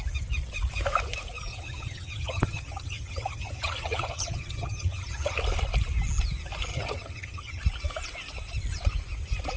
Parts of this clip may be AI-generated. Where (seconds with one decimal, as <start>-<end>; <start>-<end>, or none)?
1.5-5.4; 6.7-7.6